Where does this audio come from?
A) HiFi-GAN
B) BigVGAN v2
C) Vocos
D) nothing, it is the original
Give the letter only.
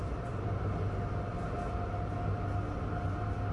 D